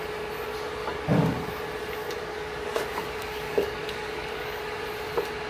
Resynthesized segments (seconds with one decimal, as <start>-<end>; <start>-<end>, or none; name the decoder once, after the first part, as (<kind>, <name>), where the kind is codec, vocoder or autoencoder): 0.8-1.5 (codec, DAC); 2.0-4.6